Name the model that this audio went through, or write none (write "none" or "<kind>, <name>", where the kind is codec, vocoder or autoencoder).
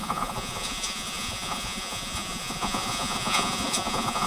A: vocoder, Vocos